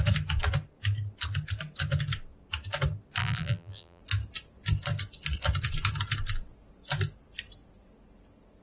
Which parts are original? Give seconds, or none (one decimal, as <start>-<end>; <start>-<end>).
0.0-3.2; 4.0-8.6